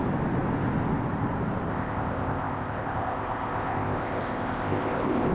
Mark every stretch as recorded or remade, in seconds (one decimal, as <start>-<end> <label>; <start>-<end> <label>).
0.0-1.7 recorded; 1.7-5.3 remade